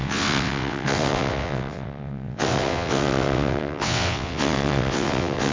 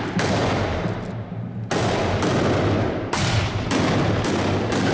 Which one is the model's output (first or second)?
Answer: first